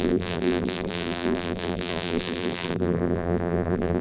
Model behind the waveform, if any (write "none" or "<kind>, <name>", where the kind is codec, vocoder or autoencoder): vocoder, BigVGAN v2